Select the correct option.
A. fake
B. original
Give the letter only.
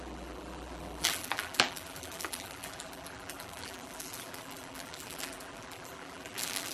A